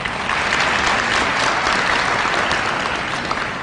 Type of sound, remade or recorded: recorded